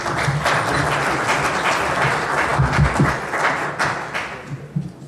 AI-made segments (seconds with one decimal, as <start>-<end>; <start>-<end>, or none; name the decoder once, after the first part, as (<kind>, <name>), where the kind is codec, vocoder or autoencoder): none